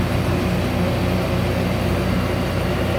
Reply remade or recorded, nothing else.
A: recorded